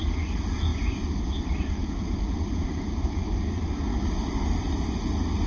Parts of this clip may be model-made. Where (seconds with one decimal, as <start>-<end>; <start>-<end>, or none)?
none